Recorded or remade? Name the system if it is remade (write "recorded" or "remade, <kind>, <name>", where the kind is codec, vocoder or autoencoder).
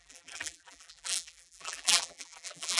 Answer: remade, vocoder, BigVGAN v2